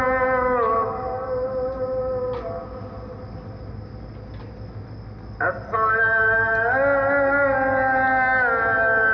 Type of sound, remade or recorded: recorded